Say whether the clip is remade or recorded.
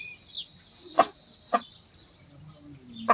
recorded